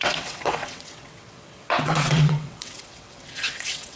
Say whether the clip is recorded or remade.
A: remade